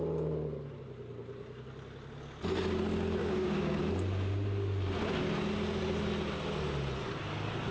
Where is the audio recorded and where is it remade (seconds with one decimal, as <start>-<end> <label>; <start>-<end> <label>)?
0.0-3.2 recorded; 3.2-3.8 remade; 3.8-7.7 recorded